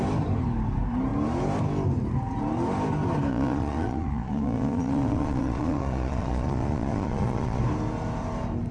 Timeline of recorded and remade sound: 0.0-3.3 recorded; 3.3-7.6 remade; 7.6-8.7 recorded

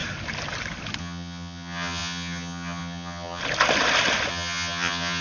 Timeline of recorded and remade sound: 0.0-1.0 recorded; 1.0-3.4 remade; 3.4-4.3 recorded; 4.3-5.2 remade

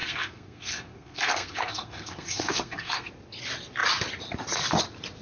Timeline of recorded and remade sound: 0.0-3.1 remade; 3.1-5.2 recorded

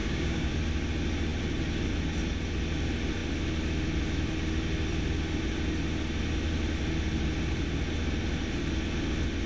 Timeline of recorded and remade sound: 0.0-0.5 remade; 0.5-9.5 recorded

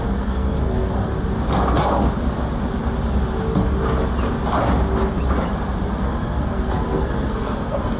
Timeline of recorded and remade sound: 0.0-1.1 remade; 1.1-5.9 recorded; 5.9-8.0 remade

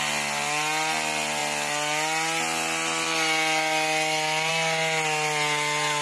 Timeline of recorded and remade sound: 0.0-6.0 recorded

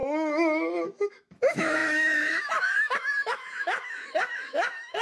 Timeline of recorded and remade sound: 0.0-5.0 remade

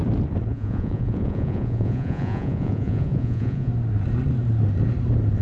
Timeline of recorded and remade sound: 0.0-0.5 recorded; 0.5-3.7 remade; 3.7-5.4 recorded